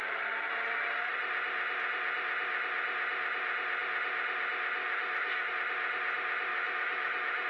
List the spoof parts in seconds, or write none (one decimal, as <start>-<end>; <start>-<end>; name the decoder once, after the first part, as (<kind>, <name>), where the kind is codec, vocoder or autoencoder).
4.8-5.5 (autoencoder, DAC-VAE); 6.5-7.5